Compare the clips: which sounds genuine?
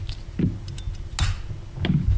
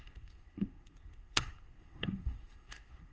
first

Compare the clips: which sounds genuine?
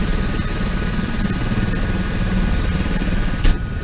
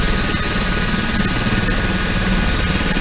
second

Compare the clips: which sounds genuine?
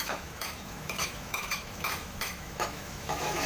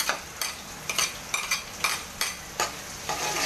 second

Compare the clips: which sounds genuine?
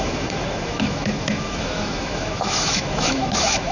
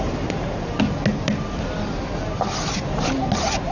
second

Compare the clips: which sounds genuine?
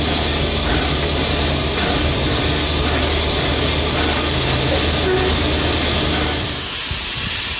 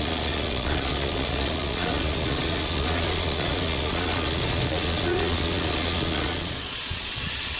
first